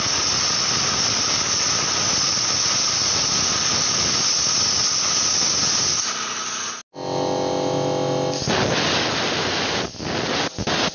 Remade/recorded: recorded